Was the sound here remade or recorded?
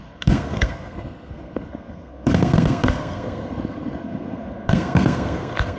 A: remade